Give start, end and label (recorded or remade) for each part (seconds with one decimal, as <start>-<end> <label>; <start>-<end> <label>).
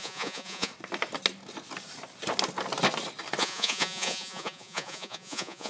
0.0-0.7 remade; 0.7-3.4 recorded; 3.4-5.7 remade